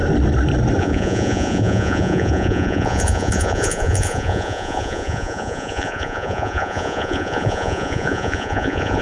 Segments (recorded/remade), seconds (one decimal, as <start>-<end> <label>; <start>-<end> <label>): 0.0-0.8 recorded; 0.8-9.0 remade